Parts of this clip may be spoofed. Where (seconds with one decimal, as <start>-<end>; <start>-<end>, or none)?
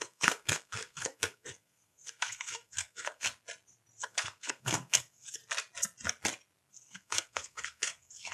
0.0-3.3; 4.0-5.4; 6.7-8.3